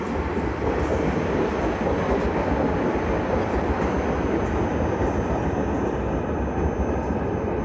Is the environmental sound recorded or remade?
recorded